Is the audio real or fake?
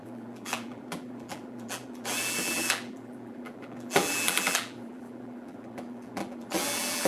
fake